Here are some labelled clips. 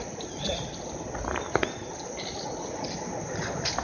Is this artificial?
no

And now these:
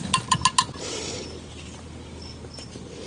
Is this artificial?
no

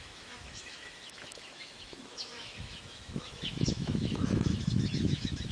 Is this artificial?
yes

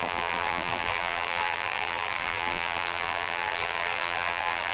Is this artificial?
yes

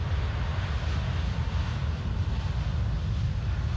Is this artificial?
no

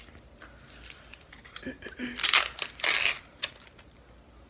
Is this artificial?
no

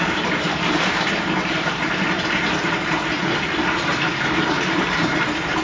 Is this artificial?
yes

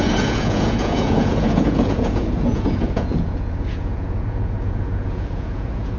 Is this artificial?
yes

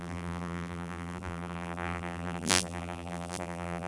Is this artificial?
yes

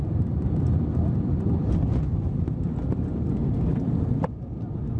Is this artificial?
no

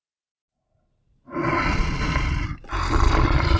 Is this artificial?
no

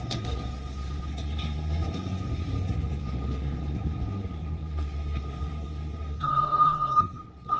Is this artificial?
yes